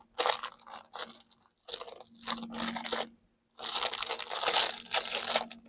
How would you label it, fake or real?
real